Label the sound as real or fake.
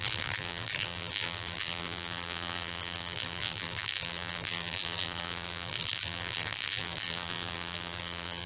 fake